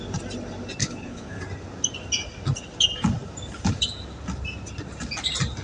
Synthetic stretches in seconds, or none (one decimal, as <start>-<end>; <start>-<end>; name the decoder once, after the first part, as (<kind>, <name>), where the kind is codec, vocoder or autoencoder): 0.8-1.4 (codec, HILCodec)